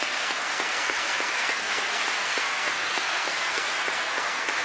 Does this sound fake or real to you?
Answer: fake